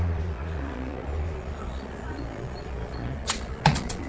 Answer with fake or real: fake